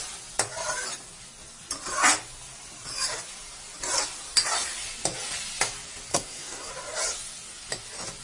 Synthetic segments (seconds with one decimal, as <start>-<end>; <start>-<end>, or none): 6.1-6.7